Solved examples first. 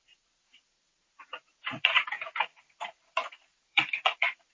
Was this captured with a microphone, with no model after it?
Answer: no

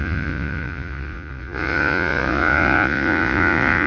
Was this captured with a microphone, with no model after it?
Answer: no